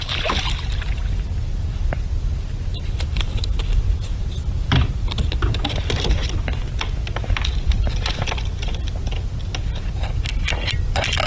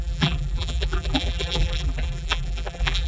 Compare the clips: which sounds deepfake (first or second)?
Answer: second